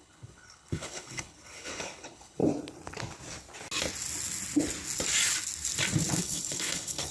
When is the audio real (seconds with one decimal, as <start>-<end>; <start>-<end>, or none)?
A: 2.4-6.1